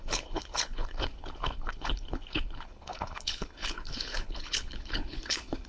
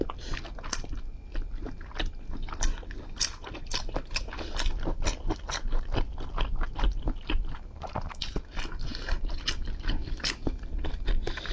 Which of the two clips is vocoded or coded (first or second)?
first